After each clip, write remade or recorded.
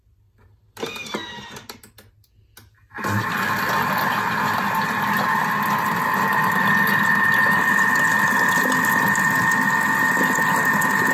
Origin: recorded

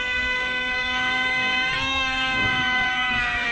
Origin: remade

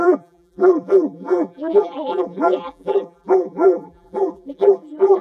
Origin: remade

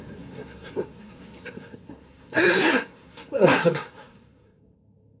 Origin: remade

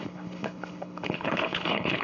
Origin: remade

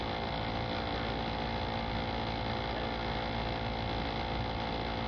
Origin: recorded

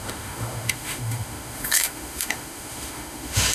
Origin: remade